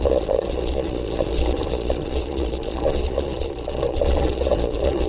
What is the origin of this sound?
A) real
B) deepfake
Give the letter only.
B